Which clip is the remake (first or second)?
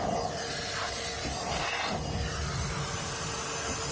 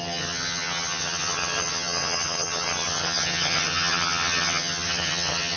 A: second